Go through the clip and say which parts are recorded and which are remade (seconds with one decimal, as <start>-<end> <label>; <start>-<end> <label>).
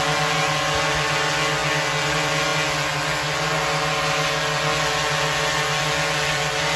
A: 0.0-6.8 recorded